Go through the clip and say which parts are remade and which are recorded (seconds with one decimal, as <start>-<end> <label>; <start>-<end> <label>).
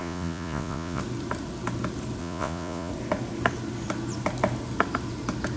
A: 0.0-1.0 remade; 1.0-2.2 recorded; 2.2-2.9 remade; 2.9-5.6 recorded